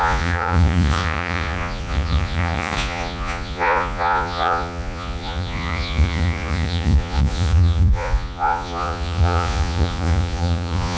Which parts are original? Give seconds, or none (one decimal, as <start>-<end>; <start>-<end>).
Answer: none